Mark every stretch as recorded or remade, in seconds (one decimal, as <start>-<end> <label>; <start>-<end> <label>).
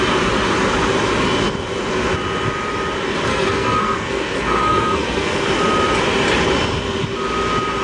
0.0-3.3 recorded; 3.3-5.5 remade; 5.5-7.8 recorded